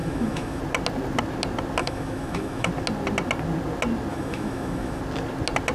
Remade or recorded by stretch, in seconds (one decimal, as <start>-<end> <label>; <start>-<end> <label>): 0.0-0.6 remade; 0.6-1.8 recorded; 1.8-2.7 remade; 2.7-4.1 recorded; 4.1-5.0 remade; 5.0-5.7 recorded